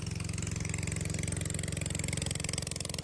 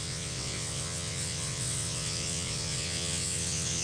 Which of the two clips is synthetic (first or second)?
second